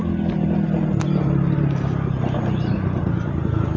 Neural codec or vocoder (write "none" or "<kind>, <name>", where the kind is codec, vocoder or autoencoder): none